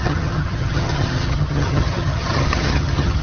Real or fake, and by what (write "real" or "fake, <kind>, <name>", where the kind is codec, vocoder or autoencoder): fake, vocoder, HiFi-GAN